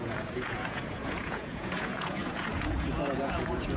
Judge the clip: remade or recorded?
remade